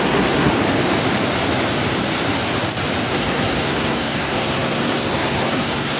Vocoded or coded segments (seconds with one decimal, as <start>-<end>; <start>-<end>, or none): 0.0-0.5; 3.1-6.0